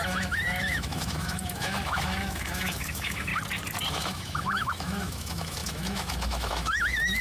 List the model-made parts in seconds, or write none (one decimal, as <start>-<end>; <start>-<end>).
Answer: 0.0-3.3; 3.9-7.2